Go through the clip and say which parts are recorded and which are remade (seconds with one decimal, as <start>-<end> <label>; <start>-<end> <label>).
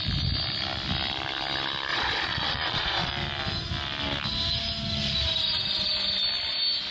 0.0-1.9 recorded; 1.9-3.1 remade; 3.1-6.9 recorded